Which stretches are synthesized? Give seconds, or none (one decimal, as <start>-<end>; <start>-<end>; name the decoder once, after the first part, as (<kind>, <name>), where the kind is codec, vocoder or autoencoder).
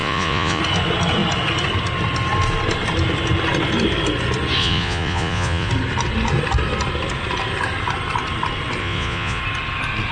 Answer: 0.0-0.6 (vocoder, Vocos); 4.6-5.7; 8.8-9.4